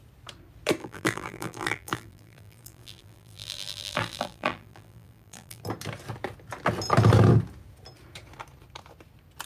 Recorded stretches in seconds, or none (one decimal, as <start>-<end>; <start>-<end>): 0.0-0.8; 5.6-9.5